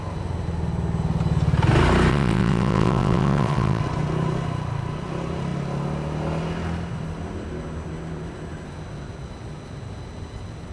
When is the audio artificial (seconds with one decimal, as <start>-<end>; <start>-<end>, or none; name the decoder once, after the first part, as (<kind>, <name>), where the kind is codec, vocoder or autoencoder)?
2.1-3.8 (vocoder, WaveNeXt)